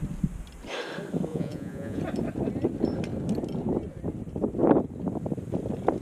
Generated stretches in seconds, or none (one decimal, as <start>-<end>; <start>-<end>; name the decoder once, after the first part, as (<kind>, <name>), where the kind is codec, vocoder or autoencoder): 1.3-2.0 (vocoder, Vocos)